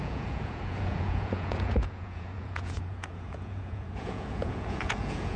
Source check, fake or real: fake